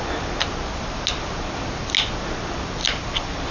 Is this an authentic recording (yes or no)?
yes